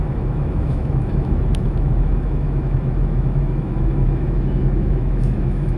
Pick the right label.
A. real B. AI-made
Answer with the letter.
B